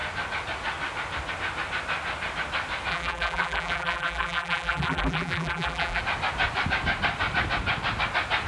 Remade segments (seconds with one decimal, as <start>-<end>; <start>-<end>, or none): 2.9-6.0